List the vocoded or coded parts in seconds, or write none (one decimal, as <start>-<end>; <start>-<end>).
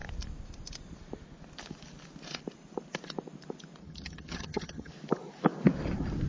3.8-4.9